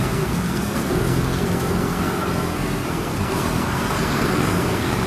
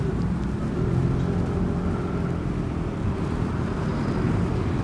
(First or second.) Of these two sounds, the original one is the second